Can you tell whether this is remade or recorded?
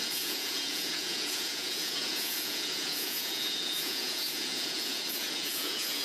remade